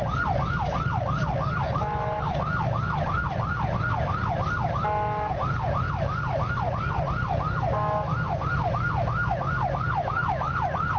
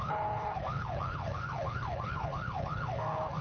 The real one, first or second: first